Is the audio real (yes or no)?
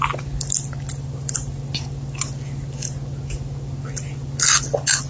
yes